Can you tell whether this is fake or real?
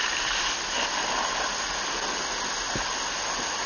real